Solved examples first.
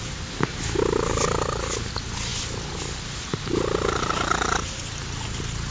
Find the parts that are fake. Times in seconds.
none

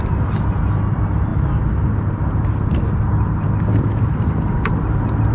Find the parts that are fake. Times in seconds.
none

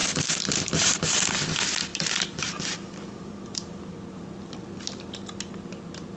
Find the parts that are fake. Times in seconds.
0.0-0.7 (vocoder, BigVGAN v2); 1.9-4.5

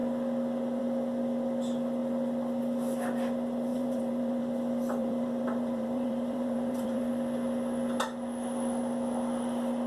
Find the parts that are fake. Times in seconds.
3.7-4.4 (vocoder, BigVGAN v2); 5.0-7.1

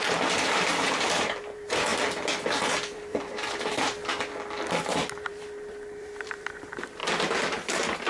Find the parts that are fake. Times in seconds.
0.0-1.9 (vocoder, BigVGAN v2); 2.7-4.0; 4.8-7.0